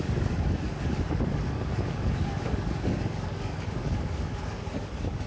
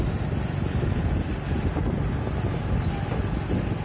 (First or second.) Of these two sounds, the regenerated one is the first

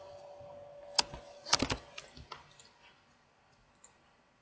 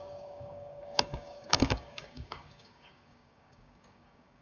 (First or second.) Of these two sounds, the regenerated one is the second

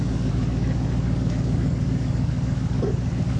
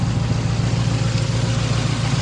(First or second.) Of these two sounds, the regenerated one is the first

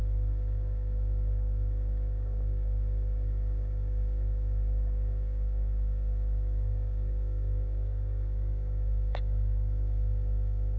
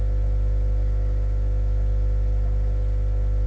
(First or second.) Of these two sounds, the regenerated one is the first